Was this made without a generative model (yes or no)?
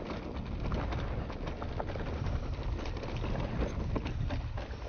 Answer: yes